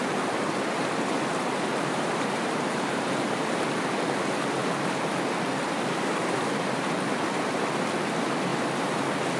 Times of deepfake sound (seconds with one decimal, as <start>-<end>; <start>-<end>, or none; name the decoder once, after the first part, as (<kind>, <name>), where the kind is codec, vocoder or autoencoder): 1.7-3.6 (vocoder, BigVGAN v2); 8.5-9.0